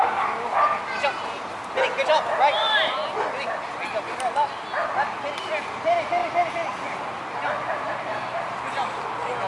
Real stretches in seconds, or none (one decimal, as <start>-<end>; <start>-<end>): 0.0-9.5